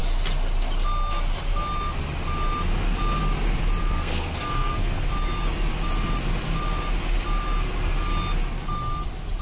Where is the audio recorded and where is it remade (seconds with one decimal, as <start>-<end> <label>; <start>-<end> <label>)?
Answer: 0.0-3.8 recorded; 3.8-5.1 remade; 5.1-9.4 recorded